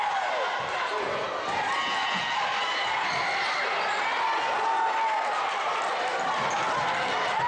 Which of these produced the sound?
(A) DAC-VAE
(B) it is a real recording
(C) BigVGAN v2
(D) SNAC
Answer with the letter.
B